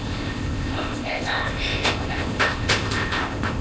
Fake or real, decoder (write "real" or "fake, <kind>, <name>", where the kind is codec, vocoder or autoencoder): fake, codec, ZipCodec